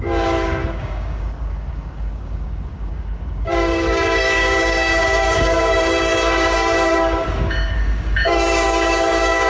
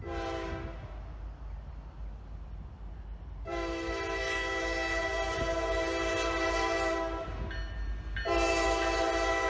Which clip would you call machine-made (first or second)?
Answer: first